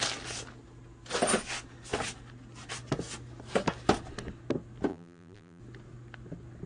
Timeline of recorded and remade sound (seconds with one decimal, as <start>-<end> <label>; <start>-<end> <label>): 0.0-4.9 recorded; 4.9-5.6 remade; 5.6-6.7 recorded